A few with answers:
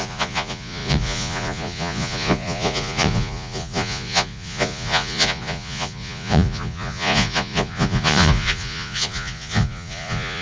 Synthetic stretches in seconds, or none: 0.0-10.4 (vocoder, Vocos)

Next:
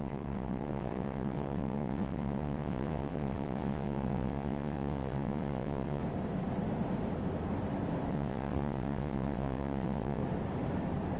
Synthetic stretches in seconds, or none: 0.0-6.0 (vocoder, WaveNeXt); 8.1-10.2

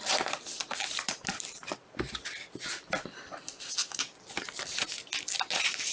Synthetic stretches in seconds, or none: 1.3-4.8 (vocoder, BigVGAN v2)

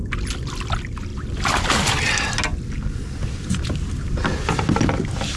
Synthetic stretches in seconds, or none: 1.1-2.0 (vocoder, BigVGAN v2)

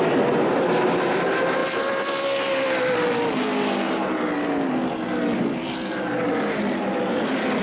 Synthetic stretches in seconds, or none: none

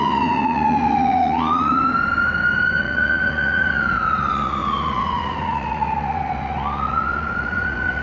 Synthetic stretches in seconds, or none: 0.0-1.8 (vocoder, Vocos); 2.8-8.0

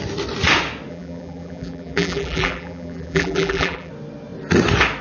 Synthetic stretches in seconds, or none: 0.9-3.9 (vocoder, BigVGAN v2)

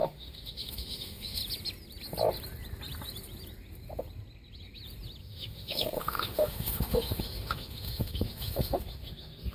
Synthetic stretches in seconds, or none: 0.0-1.4 (autoencoder, DAC-VAE); 5.2-9.5